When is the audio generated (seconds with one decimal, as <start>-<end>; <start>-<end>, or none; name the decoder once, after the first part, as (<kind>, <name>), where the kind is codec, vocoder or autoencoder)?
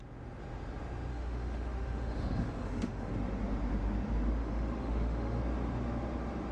1.1-3.1 (autoencoder, DAC-VAE); 4.4-5.4